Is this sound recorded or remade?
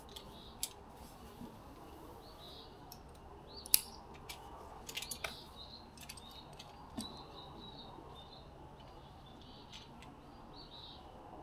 recorded